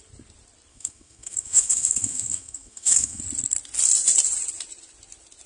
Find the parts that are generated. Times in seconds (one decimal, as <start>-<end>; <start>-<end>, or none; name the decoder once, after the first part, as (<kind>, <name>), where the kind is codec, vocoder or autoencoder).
0.7-3.2 (autoencoder, DAC-VAE)